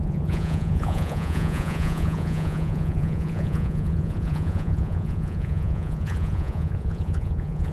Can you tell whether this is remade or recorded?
remade